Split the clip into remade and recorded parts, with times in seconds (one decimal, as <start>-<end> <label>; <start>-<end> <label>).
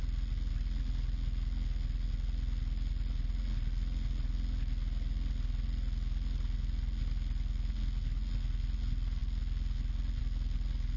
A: 0.0-11.0 recorded